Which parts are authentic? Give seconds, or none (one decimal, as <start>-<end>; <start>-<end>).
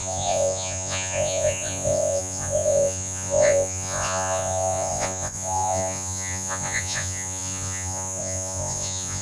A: none